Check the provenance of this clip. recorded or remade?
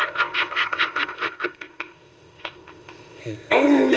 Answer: remade